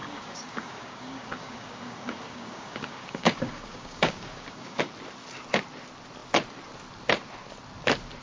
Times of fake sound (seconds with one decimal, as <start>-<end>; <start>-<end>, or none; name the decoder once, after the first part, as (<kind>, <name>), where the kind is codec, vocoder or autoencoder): 0.0-4.8 (codec, DAC)